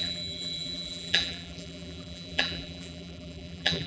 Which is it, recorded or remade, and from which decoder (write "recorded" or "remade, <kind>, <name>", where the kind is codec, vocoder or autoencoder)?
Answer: remade, vocoder, BigVGAN v2